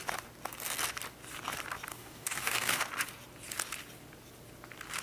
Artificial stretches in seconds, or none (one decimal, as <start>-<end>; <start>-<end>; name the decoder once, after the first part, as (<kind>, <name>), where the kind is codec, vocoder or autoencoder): 1.9-2.8 (codec, DAC)